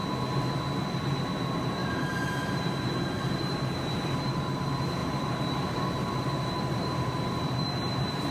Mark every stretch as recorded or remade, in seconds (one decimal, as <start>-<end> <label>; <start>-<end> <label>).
0.0-0.9 recorded; 0.9-8.3 remade